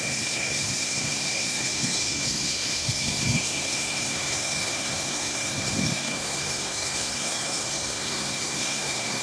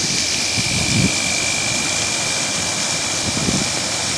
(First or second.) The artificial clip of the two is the first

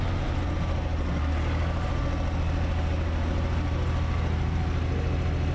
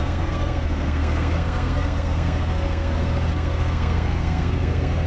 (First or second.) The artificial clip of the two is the second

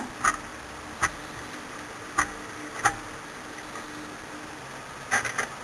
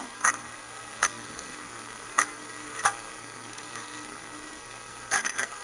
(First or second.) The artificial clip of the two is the second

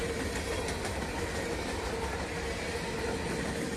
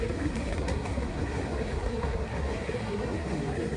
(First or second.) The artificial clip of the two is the second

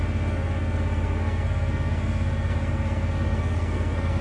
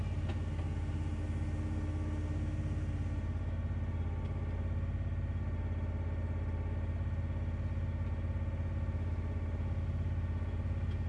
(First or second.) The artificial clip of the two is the first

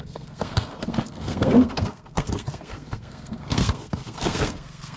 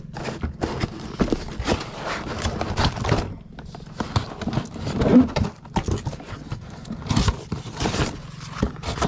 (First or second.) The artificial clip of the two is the first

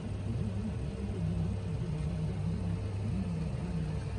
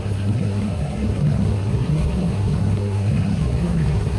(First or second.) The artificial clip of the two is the second